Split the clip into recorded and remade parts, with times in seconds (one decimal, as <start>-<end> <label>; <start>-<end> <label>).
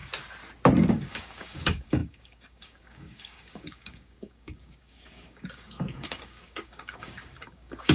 0.0-0.9 recorded; 0.9-7.9 remade